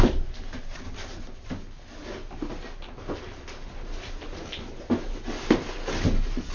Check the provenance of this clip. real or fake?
real